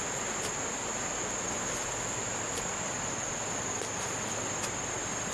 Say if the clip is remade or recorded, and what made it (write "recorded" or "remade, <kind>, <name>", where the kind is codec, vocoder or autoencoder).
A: recorded